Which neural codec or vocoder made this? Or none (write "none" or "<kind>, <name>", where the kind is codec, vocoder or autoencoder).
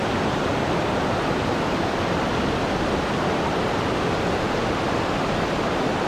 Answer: none